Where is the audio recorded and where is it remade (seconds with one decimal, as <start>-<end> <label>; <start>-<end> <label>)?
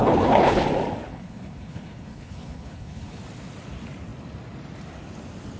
0.0-0.6 remade; 0.6-1.1 recorded; 1.1-3.2 remade; 3.2-5.6 recorded